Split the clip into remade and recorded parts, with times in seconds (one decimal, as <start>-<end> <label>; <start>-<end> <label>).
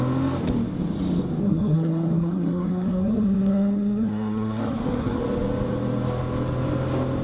0.0-1.4 recorded; 1.4-5.2 remade; 5.2-7.2 recorded